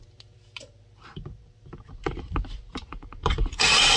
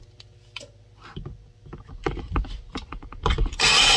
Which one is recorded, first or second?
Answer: second